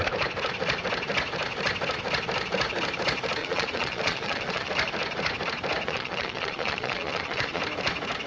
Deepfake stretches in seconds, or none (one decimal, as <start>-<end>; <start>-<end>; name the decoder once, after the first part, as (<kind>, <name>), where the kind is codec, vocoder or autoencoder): 3.4-4.7 (vocoder, Vocos); 5.8-7.6